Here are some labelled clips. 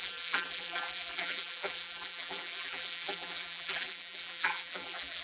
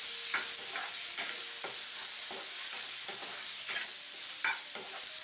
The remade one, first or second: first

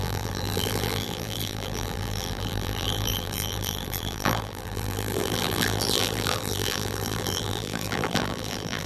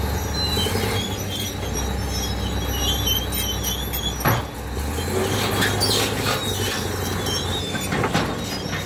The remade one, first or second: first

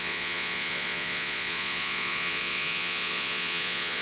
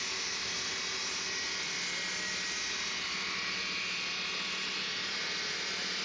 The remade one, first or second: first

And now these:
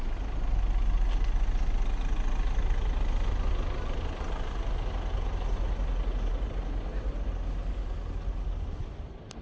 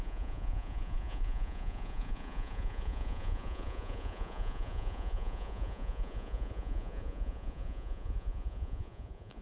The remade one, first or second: second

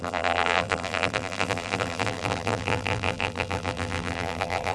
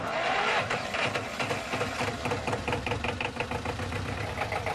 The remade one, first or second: first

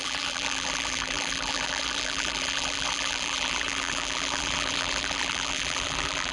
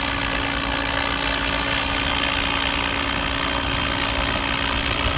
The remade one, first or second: first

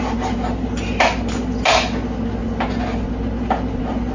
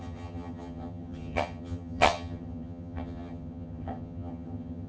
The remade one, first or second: second